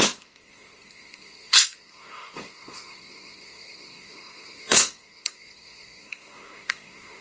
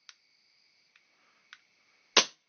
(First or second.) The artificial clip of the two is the first